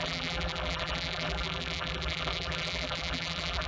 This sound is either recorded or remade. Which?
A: remade